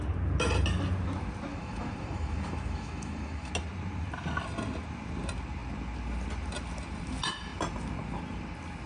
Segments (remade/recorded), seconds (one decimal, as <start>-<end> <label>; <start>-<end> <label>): 0.0-1.5 recorded; 1.5-3.5 remade; 3.5-8.9 recorded